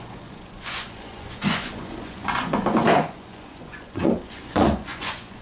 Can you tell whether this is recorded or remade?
remade